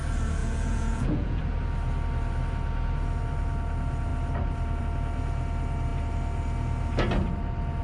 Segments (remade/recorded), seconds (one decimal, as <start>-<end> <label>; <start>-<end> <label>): 0.0-0.4 recorded; 0.4-1.4 remade; 1.4-7.8 recorded